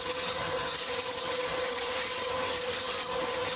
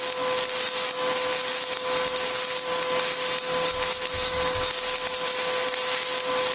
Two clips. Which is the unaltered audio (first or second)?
second